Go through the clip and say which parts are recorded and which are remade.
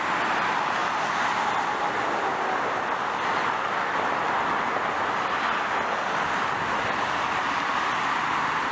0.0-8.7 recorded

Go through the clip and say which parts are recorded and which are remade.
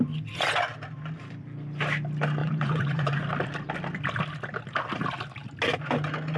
0.0-2.4 recorded; 2.4-3.2 remade; 3.2-6.4 recorded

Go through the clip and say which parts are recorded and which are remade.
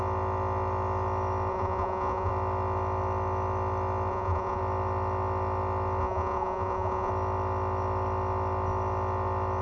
0.0-1.5 recorded; 1.5-2.3 remade; 2.3-4.1 recorded; 4.1-4.6 remade; 4.6-6.0 recorded; 6.0-7.1 remade; 7.1-9.6 recorded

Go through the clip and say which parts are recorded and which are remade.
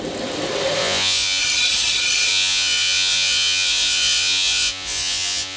0.0-0.8 recorded; 0.8-1.4 remade; 1.4-2.3 recorded; 2.3-5.6 remade